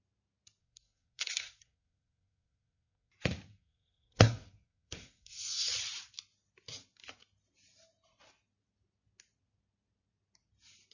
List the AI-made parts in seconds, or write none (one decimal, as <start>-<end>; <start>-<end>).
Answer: 0.6-3.1; 3.5-5.7